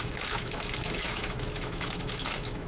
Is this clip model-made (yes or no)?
yes